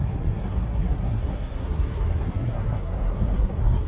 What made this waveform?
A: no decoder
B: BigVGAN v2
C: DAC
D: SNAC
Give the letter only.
D